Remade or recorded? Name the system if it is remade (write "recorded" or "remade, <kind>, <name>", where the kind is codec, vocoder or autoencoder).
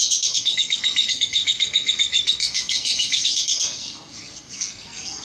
remade, codec, SNAC